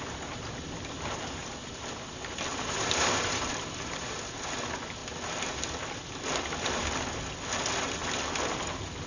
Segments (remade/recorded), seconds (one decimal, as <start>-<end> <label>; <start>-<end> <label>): 0.0-2.5 recorded; 2.5-4.0 remade; 4.0-9.1 recorded